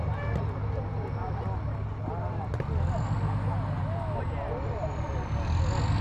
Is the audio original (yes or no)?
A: yes